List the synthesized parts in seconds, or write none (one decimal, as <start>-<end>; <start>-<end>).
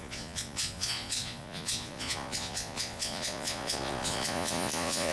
0.0-5.1